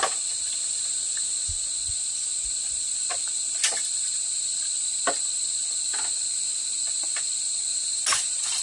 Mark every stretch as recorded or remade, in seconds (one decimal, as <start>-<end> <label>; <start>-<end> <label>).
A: 0.0-7.7 recorded; 7.7-8.6 remade